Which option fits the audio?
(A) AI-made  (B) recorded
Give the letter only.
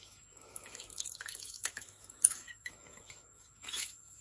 A